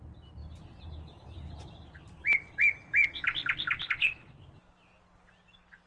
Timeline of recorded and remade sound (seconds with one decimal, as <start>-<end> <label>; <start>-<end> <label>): 0.0-5.9 recorded